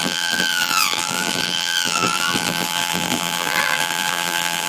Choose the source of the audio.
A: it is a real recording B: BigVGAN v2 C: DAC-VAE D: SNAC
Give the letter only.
B